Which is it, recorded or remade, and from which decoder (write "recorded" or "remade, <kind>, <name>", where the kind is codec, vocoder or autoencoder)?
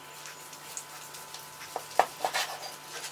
recorded